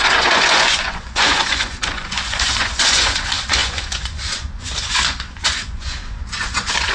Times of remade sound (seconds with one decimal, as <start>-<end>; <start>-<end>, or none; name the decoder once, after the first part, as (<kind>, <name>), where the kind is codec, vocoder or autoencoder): 0.0-6.9 (vocoder, Vocos)

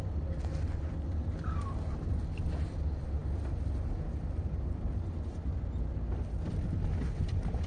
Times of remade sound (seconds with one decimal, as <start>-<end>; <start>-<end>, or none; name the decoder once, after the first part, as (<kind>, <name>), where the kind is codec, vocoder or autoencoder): none

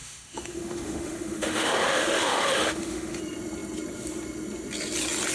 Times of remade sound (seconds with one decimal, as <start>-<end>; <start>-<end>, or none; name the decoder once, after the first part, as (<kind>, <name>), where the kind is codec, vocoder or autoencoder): 0.0-3.2 (autoencoder, DAC-VAE)

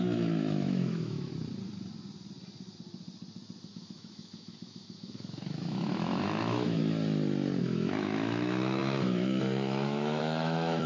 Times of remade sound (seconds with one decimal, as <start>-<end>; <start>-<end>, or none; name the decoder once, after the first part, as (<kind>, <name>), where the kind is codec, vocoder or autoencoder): 0.0-1.3 (autoencoder, DAC-VAE); 3.7-6.8; 7.6-10.9

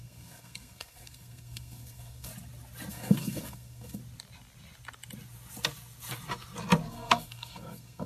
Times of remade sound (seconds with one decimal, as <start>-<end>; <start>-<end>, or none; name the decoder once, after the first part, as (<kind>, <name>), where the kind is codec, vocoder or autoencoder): 0.0-2.3 (codec, SNAC); 2.9-4.0; 6.9-8.1